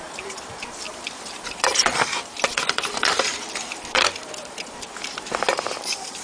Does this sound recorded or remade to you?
remade